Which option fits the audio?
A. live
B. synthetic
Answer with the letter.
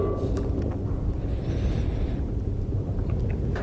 A